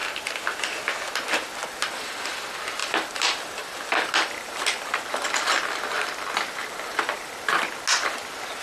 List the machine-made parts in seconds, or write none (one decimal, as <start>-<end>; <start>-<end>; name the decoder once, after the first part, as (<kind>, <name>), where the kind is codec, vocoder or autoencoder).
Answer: 1.6-2.3 (vocoder, BigVGAN v2); 2.8-5.0; 6.6-7.4